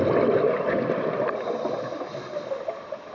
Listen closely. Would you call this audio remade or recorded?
recorded